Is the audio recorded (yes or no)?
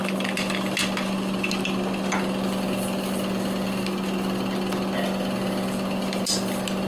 yes